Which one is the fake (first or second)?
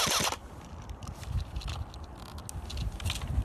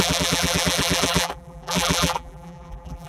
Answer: second